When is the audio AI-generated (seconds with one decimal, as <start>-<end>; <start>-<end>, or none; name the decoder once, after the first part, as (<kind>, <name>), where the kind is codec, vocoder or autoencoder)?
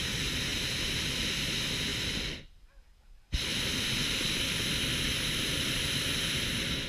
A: 0.5-1.0 (vocoder, BigVGAN v2); 1.9-3.0; 3.5-6.3